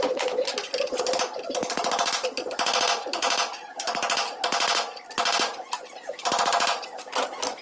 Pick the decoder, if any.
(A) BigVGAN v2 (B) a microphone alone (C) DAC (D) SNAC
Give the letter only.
B